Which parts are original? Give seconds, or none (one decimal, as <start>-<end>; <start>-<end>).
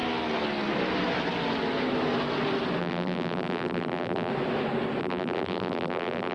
0.0-2.8; 4.3-5.0